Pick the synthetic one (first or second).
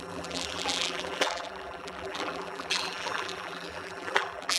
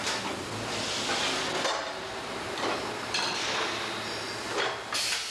first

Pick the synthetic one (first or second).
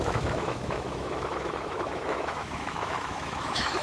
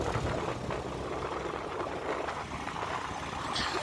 first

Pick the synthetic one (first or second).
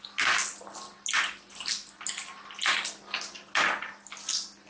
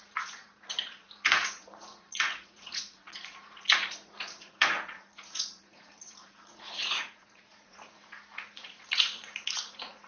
second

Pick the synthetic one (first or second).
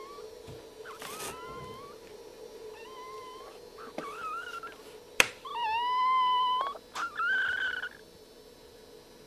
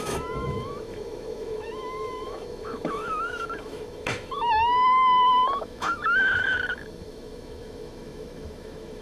second